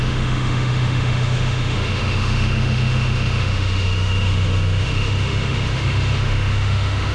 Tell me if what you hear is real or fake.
fake